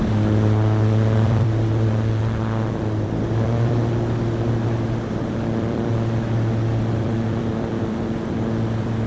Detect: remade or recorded remade